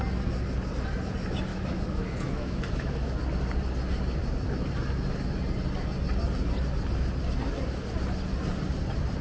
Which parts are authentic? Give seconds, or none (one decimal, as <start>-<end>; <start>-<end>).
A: 0.0-1.5; 3.2-9.2